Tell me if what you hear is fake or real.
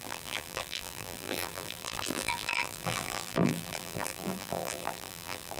fake